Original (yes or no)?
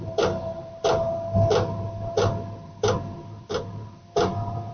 yes